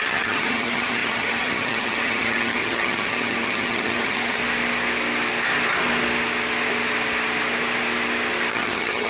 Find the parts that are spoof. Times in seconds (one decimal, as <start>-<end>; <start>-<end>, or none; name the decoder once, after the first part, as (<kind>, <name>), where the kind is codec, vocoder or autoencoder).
0.0-4.4 (vocoder, HiFi-GAN); 8.5-9.1